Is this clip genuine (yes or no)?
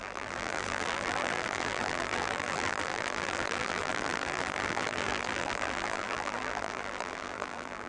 no